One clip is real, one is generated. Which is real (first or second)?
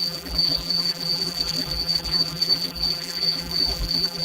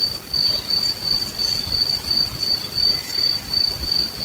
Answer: second